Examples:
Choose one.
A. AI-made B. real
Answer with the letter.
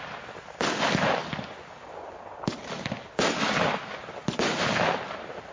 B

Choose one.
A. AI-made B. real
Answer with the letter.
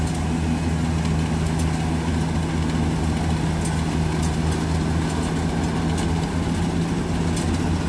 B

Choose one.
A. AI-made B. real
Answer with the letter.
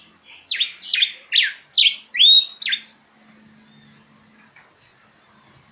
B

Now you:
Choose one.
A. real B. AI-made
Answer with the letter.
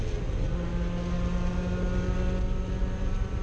A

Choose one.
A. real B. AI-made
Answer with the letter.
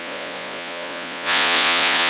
B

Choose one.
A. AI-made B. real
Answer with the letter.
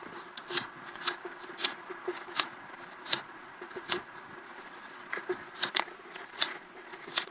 A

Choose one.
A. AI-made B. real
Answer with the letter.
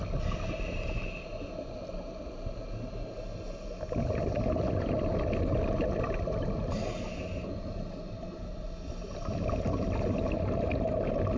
B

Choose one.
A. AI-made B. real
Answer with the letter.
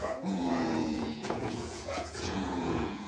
A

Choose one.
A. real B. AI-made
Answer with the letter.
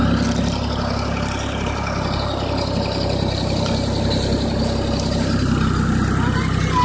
A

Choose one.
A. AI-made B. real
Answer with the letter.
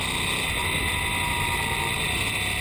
B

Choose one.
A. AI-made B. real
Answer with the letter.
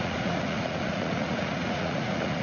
A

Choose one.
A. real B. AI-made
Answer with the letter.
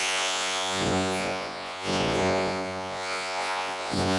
B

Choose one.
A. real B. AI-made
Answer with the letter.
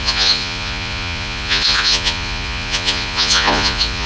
B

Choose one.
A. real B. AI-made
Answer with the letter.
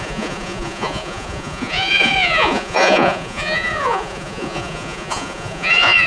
B